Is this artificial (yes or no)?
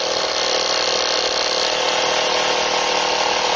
no